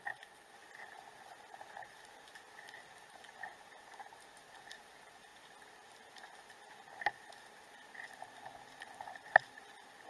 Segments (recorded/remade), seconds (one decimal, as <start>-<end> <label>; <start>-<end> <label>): 0.0-10.1 recorded